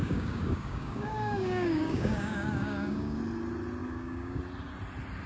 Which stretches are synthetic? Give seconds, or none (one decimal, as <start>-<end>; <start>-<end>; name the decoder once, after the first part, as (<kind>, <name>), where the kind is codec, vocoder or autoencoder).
0.0-3.2 (codec, DAC); 3.8-4.4